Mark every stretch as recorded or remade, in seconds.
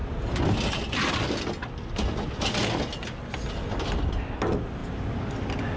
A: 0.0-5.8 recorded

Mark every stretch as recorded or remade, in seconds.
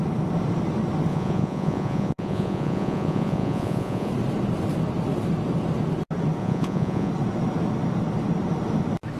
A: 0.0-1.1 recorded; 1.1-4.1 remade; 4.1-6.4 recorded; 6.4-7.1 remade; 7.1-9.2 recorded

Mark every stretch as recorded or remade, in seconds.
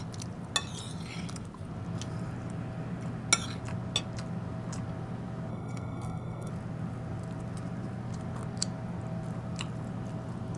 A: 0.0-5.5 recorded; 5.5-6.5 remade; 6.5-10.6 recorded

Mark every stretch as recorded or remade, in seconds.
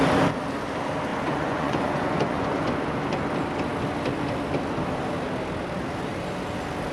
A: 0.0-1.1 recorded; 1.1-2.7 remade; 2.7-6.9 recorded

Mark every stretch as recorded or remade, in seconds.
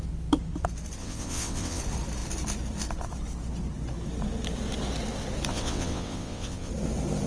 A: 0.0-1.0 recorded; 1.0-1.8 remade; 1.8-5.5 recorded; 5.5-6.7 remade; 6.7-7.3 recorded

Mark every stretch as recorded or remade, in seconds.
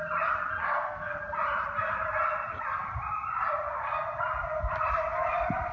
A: 0.0-0.6 recorded; 0.6-1.2 remade; 1.2-5.7 recorded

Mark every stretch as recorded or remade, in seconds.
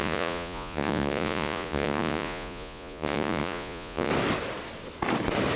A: 0.0-4.1 remade; 4.1-5.6 recorded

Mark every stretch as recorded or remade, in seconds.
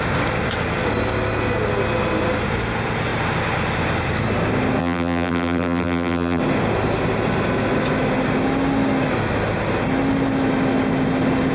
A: 0.0-4.8 recorded; 4.8-6.4 remade; 6.4-11.5 recorded